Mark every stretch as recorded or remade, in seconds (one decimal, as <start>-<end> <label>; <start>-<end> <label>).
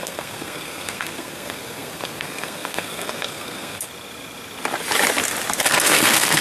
0.0-3.9 remade; 3.9-5.6 recorded; 5.6-6.4 remade